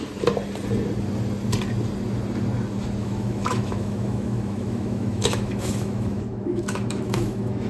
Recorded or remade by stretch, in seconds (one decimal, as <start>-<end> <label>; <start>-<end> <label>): 0.0-3.0 recorded; 3.0-7.7 remade